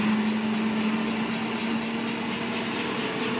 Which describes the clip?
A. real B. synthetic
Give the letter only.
A